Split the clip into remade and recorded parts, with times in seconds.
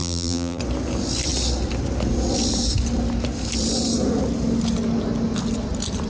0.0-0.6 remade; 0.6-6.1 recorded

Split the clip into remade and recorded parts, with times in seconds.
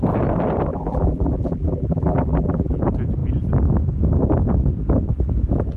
0.0-0.7 recorded; 0.7-2.8 remade; 2.8-5.8 recorded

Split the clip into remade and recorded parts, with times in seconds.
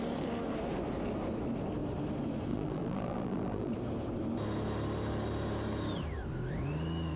0.0-2.5 recorded; 2.5-3.7 remade; 3.7-7.2 recorded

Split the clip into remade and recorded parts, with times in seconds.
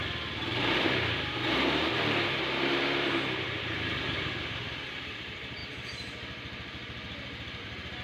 0.0-5.6 remade; 5.6-7.6 recorded; 7.6-8.0 remade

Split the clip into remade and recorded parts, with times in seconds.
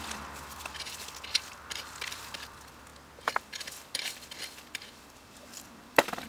0.0-2.9 remade; 2.9-3.4 recorded; 3.4-6.3 remade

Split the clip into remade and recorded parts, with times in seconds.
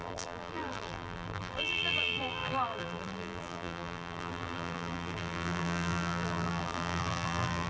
0.0-7.7 remade